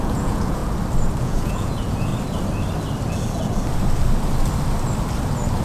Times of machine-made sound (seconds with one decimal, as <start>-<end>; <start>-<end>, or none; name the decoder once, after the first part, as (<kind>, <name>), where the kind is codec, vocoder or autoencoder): 0.0-0.6 (vocoder, Vocos); 1.2-2.1